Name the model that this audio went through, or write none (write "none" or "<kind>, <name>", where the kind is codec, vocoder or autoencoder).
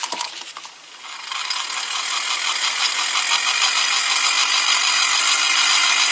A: none